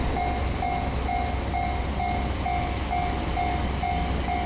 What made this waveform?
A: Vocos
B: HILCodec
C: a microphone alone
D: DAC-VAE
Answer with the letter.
C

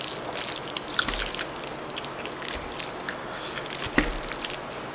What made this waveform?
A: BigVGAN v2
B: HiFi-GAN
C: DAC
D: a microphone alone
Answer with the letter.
D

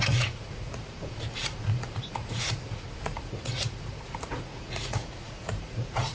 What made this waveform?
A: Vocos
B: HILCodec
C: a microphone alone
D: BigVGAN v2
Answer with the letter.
A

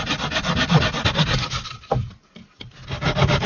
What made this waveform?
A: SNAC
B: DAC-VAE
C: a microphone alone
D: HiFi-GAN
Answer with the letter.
C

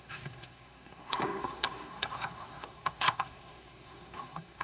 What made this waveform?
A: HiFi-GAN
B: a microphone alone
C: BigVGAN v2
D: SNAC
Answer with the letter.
D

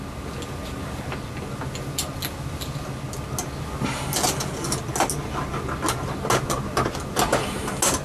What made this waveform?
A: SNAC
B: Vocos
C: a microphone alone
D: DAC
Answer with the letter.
C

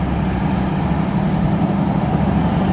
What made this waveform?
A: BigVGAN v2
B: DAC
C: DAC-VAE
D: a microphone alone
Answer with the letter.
A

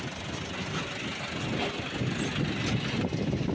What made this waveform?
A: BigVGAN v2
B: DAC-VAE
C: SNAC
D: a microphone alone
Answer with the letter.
D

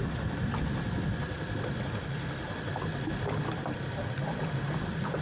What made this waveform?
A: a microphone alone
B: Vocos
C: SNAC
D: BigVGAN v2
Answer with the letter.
A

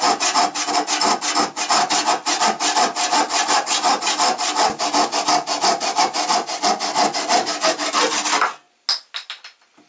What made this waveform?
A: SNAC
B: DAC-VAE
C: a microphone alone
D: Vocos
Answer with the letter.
C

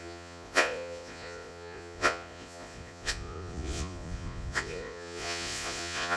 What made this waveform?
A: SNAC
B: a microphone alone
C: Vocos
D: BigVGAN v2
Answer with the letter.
C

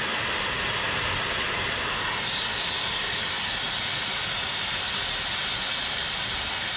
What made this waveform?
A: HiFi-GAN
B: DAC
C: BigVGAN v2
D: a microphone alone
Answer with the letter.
D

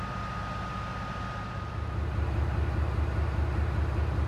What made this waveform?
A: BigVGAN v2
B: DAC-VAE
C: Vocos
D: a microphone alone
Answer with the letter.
D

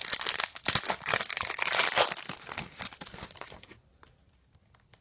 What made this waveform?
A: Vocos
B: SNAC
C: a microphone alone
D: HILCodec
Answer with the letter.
C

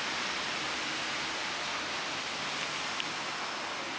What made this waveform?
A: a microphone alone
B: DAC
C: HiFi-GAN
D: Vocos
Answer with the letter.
A